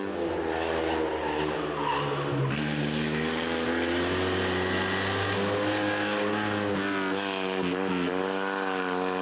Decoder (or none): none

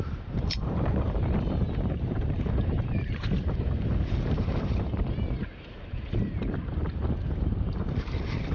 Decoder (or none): vocoder, BigVGAN v2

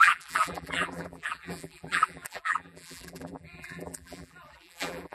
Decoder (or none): vocoder, BigVGAN v2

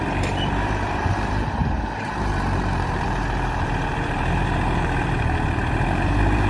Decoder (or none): vocoder, BigVGAN v2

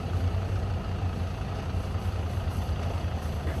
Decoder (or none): vocoder, BigVGAN v2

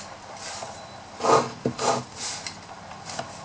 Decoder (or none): none